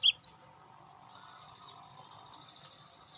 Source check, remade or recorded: recorded